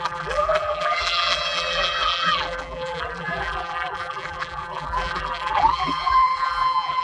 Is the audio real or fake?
fake